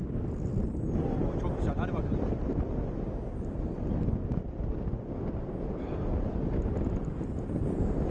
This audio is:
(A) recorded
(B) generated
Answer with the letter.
A